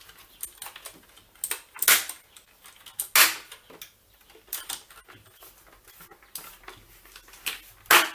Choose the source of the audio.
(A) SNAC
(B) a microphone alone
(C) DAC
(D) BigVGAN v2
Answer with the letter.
B